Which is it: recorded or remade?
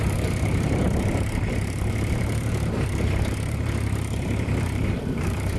remade